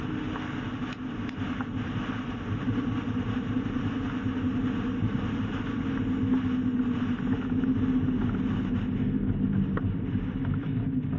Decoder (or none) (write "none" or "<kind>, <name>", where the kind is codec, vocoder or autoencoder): none